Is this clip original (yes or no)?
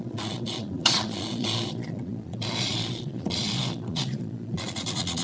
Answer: no